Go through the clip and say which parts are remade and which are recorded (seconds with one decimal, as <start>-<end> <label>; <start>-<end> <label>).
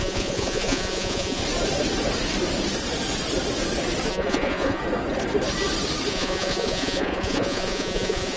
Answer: 0.0-1.4 remade; 1.4-4.1 recorded; 4.1-4.8 remade; 4.8-6.1 recorded; 6.1-8.4 remade